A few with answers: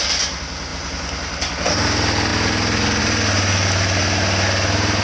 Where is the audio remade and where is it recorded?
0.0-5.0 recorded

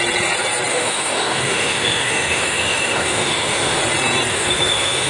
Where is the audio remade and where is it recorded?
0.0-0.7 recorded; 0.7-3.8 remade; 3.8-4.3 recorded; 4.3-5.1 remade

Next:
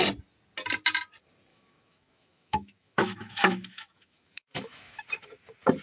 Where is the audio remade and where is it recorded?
0.0-1.5 recorded; 1.5-5.0 remade; 5.0-5.8 recorded